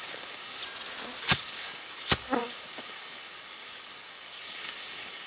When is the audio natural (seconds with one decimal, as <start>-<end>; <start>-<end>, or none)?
0.6-1.2